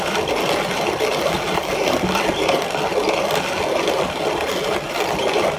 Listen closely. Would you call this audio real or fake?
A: real